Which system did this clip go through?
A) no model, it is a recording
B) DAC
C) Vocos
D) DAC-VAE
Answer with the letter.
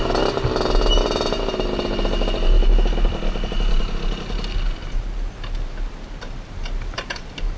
A